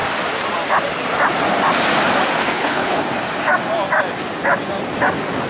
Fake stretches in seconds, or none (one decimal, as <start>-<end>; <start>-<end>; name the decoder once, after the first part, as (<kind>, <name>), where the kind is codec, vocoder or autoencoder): 2.4-3.0 (codec, HILCodec)